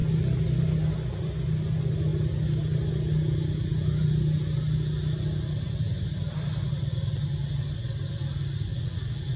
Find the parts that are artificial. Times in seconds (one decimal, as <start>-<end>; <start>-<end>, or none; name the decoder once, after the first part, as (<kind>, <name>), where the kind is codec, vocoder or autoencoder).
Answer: 8.7-9.4 (vocoder, Vocos)